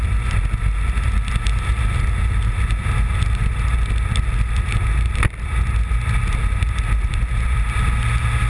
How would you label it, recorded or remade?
recorded